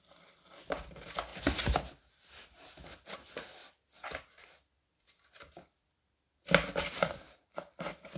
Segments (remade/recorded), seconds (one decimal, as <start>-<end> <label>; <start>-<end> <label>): 0.0-8.2 recorded